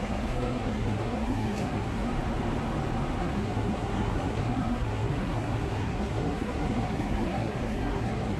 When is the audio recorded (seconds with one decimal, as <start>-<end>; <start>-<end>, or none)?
2.1-3.2